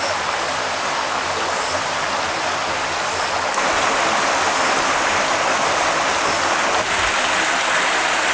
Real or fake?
real